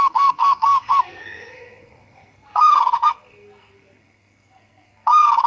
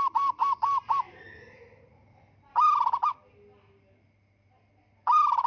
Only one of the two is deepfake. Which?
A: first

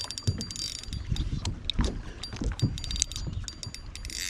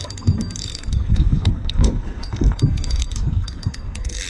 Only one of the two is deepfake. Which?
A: second